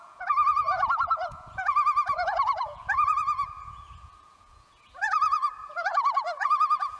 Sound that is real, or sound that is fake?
fake